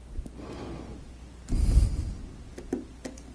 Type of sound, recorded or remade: recorded